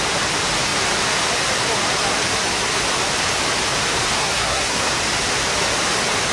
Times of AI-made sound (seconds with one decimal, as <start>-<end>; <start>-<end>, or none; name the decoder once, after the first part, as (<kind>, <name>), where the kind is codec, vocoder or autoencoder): 4.2-4.9 (codec, SNAC)